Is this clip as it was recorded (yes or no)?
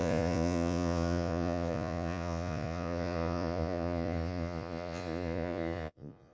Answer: no